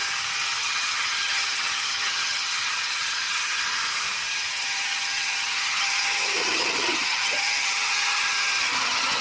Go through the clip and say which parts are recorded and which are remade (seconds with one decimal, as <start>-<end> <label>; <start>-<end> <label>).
0.0-0.6 recorded; 0.6-3.6 remade; 3.6-4.3 recorded; 4.3-9.2 remade